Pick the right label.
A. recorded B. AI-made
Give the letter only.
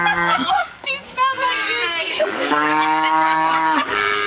B